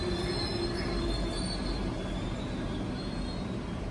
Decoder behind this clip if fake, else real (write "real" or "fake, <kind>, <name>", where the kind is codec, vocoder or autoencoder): real